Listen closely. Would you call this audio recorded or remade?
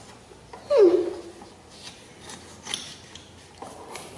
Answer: recorded